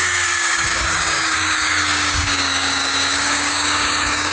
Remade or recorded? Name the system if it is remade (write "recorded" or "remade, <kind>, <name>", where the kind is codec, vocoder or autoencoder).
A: remade, codec, DAC